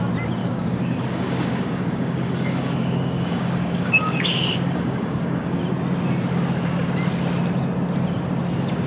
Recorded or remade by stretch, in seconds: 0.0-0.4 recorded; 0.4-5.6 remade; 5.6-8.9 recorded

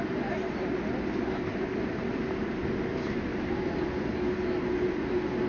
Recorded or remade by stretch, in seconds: 0.0-5.5 recorded